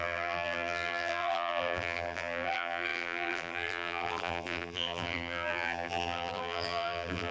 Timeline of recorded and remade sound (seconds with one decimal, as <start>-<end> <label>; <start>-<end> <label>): 0.0-7.3 remade